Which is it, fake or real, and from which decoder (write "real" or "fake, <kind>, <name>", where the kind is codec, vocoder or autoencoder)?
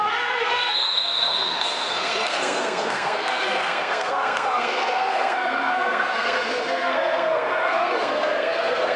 fake, codec, SNAC